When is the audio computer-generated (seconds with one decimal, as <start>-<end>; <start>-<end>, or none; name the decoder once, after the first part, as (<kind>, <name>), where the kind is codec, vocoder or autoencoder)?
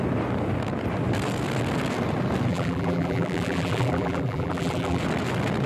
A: 2.5-5.0 (vocoder, BigVGAN v2)